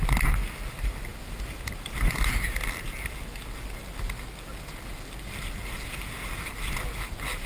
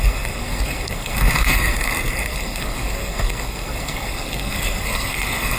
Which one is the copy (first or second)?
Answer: second